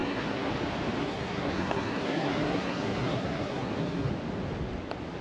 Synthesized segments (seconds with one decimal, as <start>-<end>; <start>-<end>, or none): 0.0-0.5; 1.0-4.1